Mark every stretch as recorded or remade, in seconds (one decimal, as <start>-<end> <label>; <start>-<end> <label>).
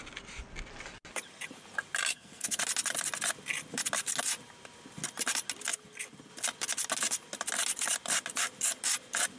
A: 0.0-2.1 recorded; 2.1-2.6 remade; 2.6-9.4 recorded